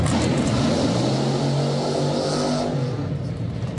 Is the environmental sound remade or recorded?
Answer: recorded